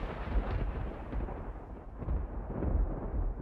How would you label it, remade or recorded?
remade